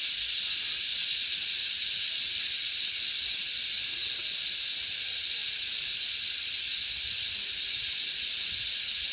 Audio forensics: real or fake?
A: real